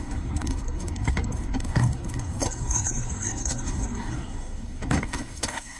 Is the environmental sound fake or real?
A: fake